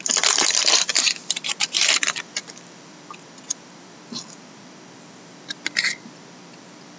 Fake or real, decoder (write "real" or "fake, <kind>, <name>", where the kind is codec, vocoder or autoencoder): fake, vocoder, BigVGAN v2